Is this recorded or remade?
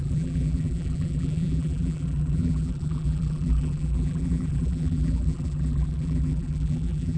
remade